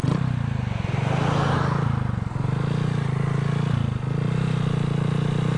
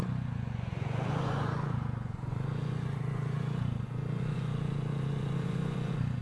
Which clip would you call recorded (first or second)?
first